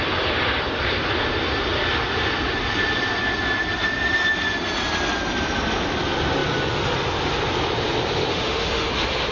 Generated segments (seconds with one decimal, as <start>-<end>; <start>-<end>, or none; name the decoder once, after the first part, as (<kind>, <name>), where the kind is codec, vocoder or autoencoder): 8.3-8.9 (autoencoder, DAC-VAE)